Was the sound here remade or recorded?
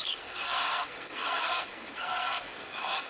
remade